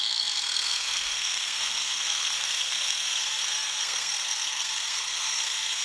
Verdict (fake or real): fake